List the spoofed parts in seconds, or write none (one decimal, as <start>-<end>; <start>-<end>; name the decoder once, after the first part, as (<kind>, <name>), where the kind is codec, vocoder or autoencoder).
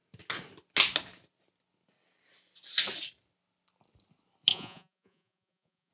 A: 4.5-5.9 (vocoder, Vocos)